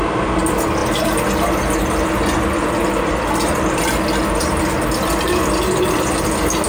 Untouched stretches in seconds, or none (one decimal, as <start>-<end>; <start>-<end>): 0.0-6.7